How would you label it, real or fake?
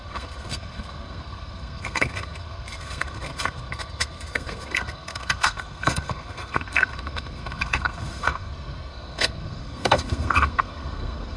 fake